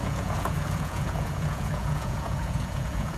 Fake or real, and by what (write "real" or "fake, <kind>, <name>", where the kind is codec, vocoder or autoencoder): fake, vocoder, Vocos